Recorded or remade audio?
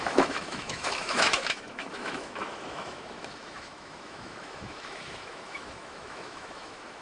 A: remade